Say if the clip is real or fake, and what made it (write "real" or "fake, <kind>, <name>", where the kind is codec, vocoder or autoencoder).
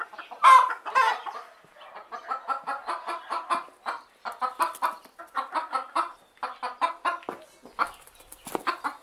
real